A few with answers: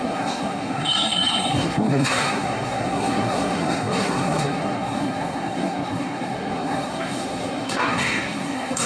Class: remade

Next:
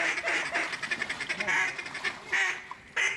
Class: recorded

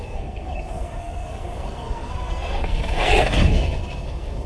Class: remade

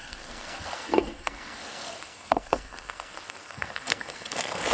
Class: remade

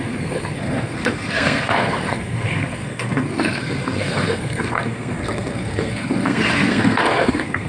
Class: remade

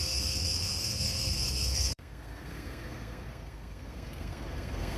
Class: remade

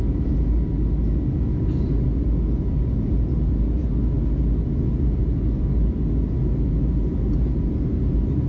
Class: recorded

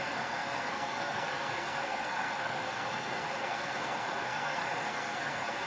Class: remade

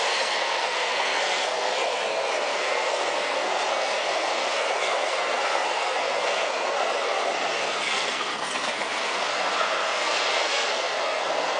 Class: remade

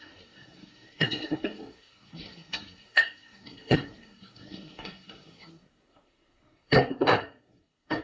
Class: remade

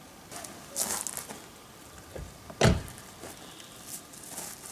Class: recorded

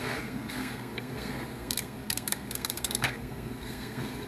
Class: remade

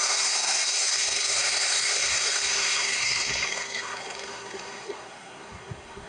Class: remade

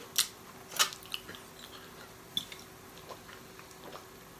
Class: recorded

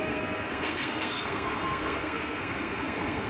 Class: remade